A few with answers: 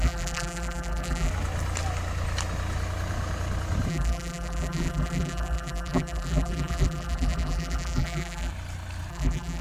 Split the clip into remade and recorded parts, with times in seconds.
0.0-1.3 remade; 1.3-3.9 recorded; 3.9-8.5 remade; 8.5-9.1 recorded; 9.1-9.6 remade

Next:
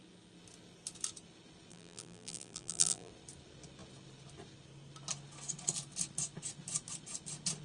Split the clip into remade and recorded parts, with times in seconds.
0.0-1.7 recorded; 1.7-3.1 remade; 3.1-7.6 recorded

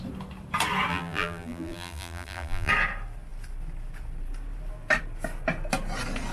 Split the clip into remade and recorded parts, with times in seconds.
0.0-0.9 recorded; 0.9-2.7 remade; 2.7-6.3 recorded

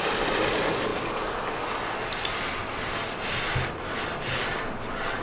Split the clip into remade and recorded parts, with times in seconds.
0.0-5.2 recorded